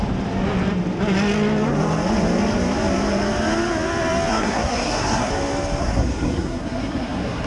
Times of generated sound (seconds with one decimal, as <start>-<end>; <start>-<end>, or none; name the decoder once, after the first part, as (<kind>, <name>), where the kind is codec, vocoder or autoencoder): 4.3-5.3 (codec, SNAC); 5.8-7.5